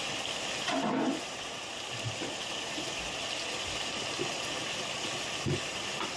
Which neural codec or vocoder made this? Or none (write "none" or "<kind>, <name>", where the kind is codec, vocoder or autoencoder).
none